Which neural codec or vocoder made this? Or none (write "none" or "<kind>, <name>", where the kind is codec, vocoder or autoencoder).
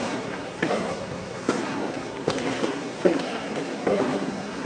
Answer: codec, SNAC